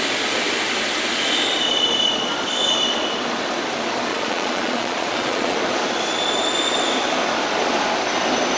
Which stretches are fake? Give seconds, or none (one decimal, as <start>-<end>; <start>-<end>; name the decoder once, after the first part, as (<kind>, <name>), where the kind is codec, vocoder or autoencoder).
4.1-5.6 (vocoder, Vocos)